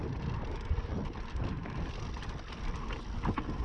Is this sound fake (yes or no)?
no